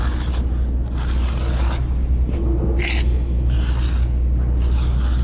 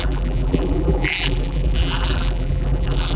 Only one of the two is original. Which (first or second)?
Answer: first